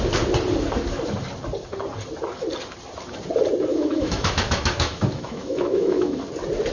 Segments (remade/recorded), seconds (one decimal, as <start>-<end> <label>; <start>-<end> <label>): 0.0-3.7 recorded; 3.7-6.2 remade; 6.2-6.7 recorded